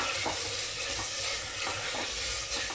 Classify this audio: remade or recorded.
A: recorded